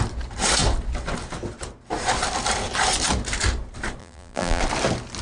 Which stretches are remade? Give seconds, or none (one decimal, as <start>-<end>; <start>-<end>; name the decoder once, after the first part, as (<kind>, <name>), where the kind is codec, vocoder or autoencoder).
4.0-4.6 (vocoder, BigVGAN v2)